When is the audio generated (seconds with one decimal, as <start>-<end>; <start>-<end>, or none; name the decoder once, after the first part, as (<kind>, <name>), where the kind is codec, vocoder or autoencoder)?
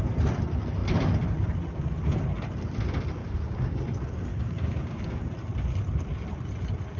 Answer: 3.2-3.8 (codec, DAC); 4.3-5.2